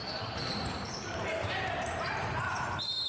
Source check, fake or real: fake